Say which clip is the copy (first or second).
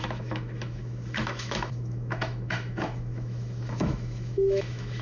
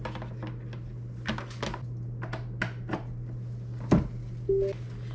first